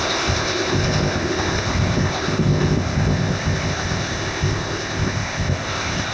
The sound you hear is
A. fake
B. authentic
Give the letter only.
A